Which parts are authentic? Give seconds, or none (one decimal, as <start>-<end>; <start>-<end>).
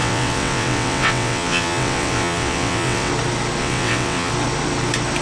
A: 3.1-3.6; 4.3-5.2